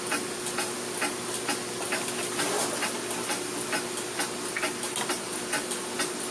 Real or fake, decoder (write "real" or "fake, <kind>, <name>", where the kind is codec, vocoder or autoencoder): real